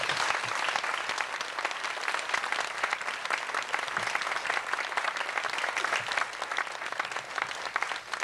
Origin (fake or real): real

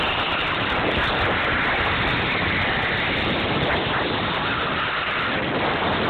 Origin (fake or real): fake